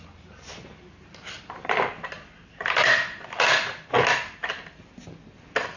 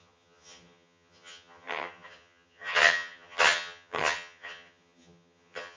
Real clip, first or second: first